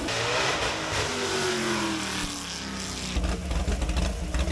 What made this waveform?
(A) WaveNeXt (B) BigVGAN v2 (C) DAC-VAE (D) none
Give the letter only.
D